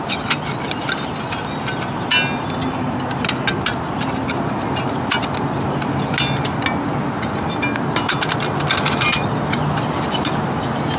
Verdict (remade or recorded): recorded